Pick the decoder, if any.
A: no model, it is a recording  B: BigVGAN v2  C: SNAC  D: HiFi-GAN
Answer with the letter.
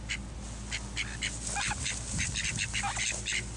A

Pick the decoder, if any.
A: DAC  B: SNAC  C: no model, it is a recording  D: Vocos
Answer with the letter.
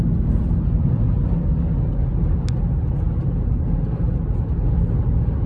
C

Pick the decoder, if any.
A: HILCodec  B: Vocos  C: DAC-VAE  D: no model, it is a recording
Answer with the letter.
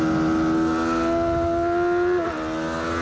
D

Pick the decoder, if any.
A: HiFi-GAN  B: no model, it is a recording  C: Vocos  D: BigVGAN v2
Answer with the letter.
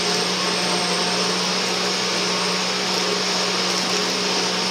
B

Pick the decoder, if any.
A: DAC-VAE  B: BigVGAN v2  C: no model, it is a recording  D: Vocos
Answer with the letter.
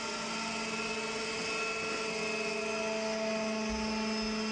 C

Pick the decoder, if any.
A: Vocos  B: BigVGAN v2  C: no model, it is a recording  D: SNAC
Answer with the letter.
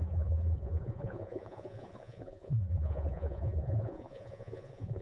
A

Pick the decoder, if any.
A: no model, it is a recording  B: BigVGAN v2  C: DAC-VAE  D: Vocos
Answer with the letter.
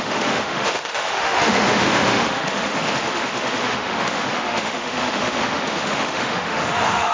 C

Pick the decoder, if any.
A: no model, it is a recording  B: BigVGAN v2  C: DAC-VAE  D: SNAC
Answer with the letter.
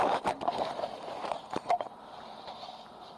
B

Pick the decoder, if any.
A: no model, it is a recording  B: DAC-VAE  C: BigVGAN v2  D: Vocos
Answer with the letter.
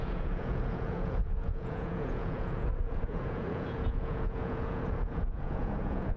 D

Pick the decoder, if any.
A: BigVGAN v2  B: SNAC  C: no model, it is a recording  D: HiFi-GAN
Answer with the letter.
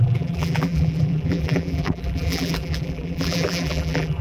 A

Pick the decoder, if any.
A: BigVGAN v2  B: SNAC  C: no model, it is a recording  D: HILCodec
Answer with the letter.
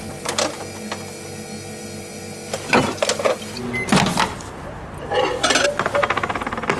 C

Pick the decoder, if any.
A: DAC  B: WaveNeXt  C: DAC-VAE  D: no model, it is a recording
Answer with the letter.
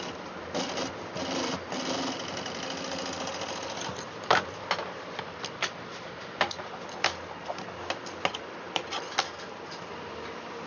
D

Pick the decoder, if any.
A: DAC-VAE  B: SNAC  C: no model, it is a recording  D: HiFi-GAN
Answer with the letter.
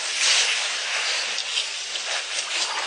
C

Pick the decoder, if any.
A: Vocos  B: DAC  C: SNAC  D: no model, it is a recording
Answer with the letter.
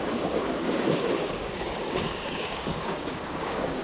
B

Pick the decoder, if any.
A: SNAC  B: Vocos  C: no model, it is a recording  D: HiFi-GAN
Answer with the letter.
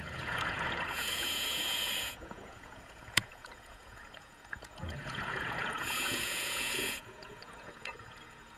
B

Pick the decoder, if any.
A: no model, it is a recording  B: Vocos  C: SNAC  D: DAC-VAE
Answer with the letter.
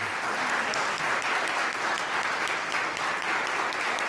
A